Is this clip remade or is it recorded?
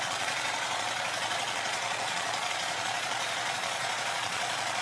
remade